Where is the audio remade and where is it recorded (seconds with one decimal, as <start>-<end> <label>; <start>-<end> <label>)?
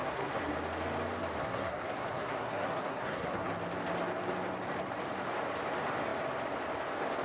0.0-0.5 remade; 0.5-1.4 recorded; 1.4-3.5 remade; 3.5-7.2 recorded